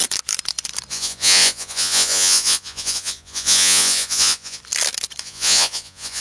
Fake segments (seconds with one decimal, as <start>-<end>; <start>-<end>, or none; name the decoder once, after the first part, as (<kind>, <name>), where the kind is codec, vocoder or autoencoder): 0.9-4.6 (vocoder, Vocos); 5.2-6.2